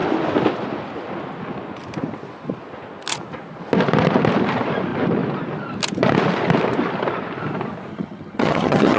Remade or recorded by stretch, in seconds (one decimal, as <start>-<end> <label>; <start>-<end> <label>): 0.0-7.9 recorded; 7.9-9.0 remade